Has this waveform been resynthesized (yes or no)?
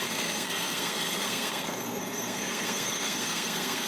yes